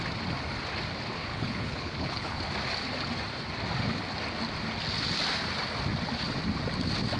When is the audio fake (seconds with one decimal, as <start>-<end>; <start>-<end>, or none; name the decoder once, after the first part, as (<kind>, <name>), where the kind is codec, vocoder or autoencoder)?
1.3-2.4 (codec, HILCodec)